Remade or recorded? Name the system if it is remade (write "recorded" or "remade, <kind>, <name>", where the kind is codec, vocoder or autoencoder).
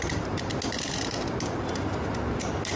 recorded